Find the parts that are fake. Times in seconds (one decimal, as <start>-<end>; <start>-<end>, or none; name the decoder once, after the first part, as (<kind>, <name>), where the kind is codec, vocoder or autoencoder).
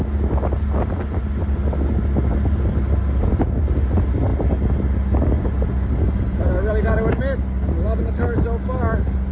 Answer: none